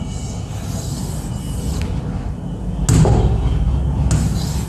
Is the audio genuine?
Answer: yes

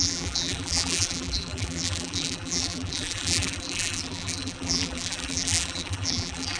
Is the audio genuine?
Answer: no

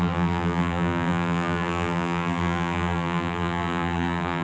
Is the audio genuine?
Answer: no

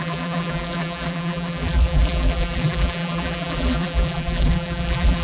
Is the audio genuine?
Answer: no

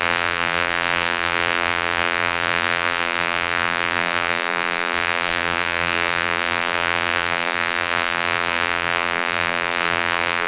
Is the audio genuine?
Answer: no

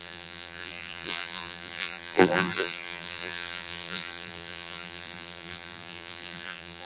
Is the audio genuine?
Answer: no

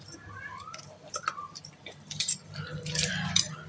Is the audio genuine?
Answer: no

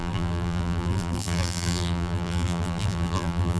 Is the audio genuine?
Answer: no